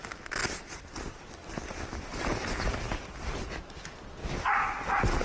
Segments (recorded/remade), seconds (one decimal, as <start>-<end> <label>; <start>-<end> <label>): 0.0-5.2 recorded